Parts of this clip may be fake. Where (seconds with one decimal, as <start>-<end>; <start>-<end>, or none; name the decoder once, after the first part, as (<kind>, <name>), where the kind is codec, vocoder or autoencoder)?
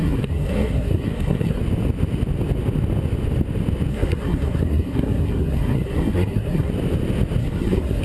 0.0-1.6 (codec, SNAC); 3.9-6.7; 7.4-8.0